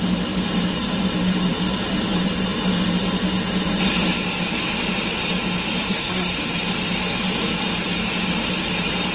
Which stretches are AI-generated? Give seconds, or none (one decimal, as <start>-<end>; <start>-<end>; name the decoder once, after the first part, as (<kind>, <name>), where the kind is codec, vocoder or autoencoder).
5.8-6.5 (codec, SNAC)